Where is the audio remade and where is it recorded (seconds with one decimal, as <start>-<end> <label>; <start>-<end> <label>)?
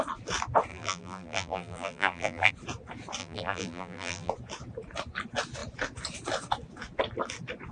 0.0-0.7 recorded; 0.7-2.5 remade; 2.5-3.2 recorded; 3.2-4.3 remade; 4.3-7.7 recorded